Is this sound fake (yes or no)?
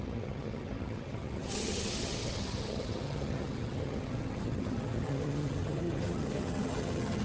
yes